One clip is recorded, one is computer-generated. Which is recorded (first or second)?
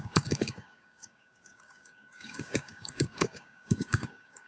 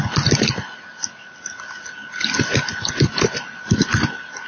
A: second